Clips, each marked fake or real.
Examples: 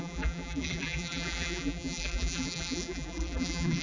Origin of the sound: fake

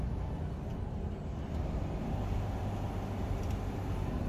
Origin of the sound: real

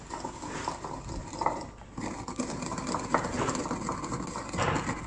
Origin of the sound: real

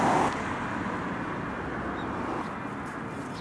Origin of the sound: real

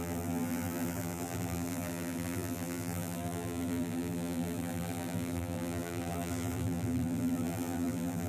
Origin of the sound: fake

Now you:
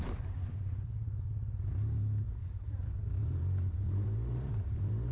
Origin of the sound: fake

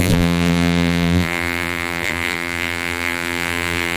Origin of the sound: fake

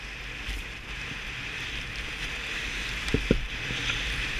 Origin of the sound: fake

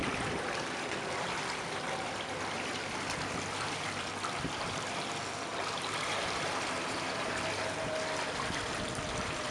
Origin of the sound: fake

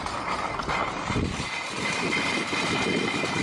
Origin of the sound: real